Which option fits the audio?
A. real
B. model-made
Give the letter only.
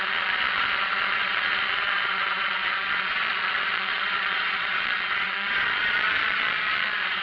B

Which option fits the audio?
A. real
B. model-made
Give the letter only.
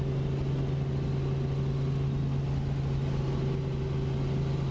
A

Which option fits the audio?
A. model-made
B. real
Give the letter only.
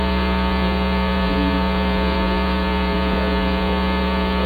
A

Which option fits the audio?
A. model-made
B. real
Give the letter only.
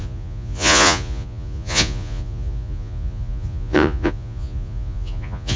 A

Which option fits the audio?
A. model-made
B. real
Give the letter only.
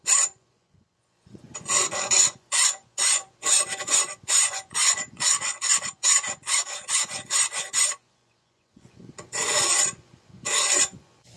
A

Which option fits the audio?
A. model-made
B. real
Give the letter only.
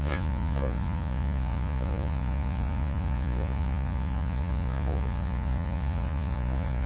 A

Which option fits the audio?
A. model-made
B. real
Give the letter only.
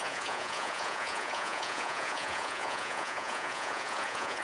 A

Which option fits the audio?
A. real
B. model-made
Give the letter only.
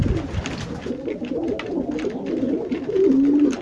A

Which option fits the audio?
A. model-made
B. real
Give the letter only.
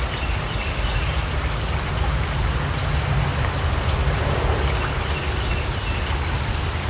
B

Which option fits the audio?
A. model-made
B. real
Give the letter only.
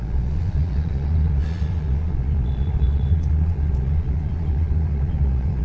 A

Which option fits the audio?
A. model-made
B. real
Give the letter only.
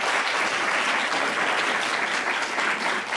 B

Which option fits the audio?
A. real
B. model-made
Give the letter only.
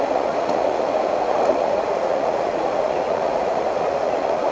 B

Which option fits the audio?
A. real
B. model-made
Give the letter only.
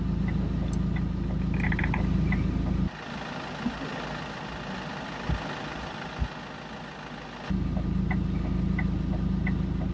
A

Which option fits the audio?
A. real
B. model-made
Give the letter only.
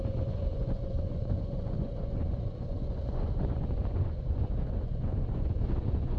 B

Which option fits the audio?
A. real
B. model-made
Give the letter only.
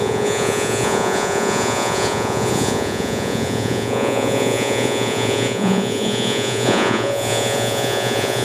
B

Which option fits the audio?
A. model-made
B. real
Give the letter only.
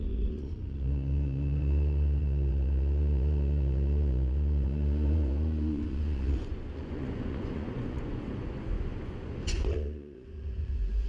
A